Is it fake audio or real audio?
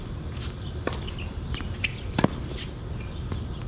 real